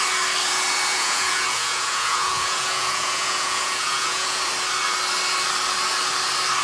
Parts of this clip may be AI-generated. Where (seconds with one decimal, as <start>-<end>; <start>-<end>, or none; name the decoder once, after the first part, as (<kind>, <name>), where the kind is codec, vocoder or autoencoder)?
0.9-4.4 (vocoder, Vocos)